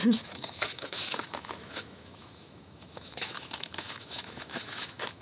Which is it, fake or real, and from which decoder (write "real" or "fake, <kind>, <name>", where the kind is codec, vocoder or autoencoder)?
fake, autoencoder, DAC-VAE